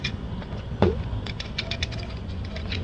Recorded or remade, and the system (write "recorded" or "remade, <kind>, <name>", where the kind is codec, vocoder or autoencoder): remade, vocoder, Vocos